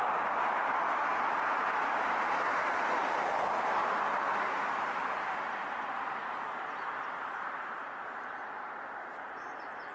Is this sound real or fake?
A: real